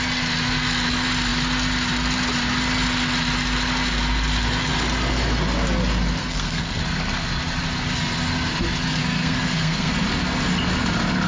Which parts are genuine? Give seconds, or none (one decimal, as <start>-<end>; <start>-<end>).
0.0-6.2; 6.8-9.0; 9.9-11.3